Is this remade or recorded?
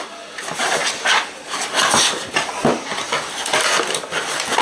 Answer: remade